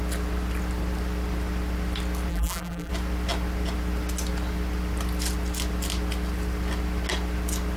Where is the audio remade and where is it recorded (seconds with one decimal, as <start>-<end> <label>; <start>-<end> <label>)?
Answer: 0.0-2.3 recorded; 2.3-2.9 remade; 2.9-7.8 recorded